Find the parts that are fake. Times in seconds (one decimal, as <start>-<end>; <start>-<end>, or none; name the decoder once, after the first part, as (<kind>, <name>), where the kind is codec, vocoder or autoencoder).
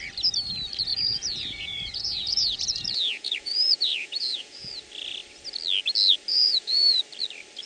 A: 0.9-4.7 (vocoder, Vocos); 6.3-7.0